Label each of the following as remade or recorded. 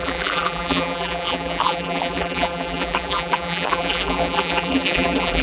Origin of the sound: remade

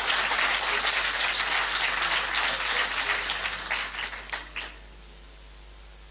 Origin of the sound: recorded